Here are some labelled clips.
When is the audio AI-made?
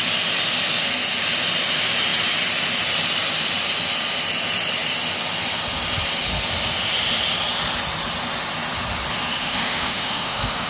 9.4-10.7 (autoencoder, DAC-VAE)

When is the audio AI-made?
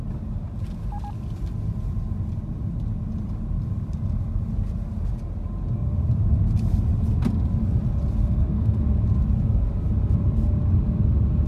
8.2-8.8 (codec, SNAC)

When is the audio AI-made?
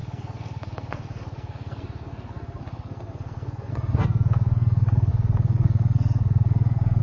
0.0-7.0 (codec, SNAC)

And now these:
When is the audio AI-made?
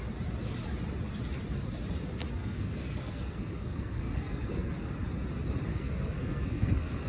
2.4-4.9 (codec, SNAC); 5.7-7.1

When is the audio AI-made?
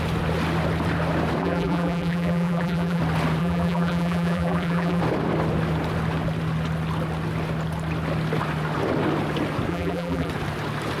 1.4-3.0 (vocoder, BigVGAN v2); 3.4-5.0; 9.7-10.3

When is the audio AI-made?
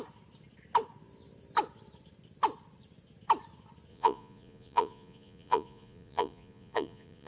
3.9-7.3 (vocoder, Vocos)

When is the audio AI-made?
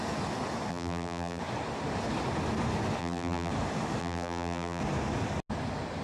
0.7-1.4 (vocoder, BigVGAN v2); 3.0-3.5; 4.0-4.8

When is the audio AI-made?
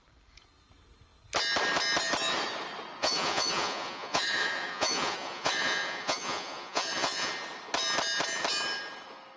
3.0-7.3 (vocoder, Vocos)